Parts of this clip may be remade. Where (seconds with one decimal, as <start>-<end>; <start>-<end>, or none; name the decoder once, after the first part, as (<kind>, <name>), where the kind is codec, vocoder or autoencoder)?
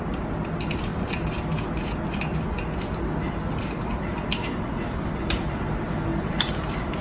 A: 6.1-7.0 (vocoder, BigVGAN v2)